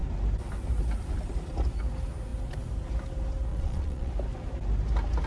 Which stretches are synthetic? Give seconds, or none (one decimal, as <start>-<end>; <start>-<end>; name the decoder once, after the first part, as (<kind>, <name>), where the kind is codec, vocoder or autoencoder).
3.5-4.1 (vocoder, Vocos)